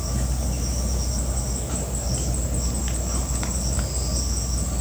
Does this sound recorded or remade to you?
recorded